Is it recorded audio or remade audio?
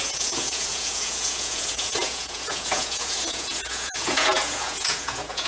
remade